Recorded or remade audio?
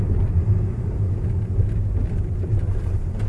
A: recorded